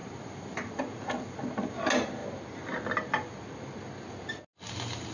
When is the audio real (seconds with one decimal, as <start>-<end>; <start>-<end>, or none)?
0.0-5.1